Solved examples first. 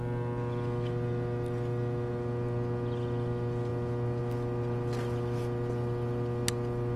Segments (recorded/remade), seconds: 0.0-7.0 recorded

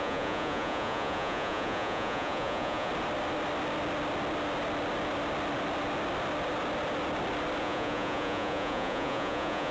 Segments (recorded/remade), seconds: 0.0-2.9 remade; 2.9-7.6 recorded; 7.6-9.7 remade

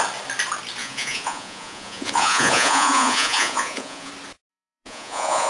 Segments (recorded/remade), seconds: 0.0-0.8 recorded; 0.8-4.1 remade; 4.1-4.5 recorded; 4.5-5.5 remade

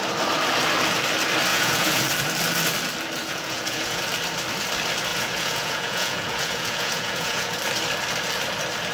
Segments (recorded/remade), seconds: 0.0-1.5 recorded; 1.5-2.0 remade; 2.0-3.2 recorded; 3.2-4.0 remade; 4.0-5.1 recorded; 5.1-7.5 remade; 7.5-8.9 recorded

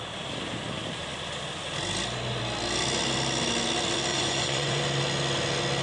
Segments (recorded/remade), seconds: 0.0-4.1 recorded; 4.1-4.8 remade; 4.8-5.8 recorded

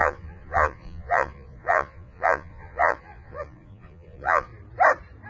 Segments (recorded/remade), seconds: 0.0-4.5 remade; 4.5-5.3 recorded